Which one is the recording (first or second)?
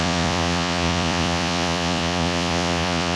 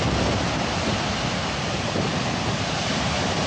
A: second